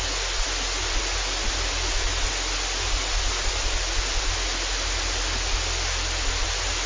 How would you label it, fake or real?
real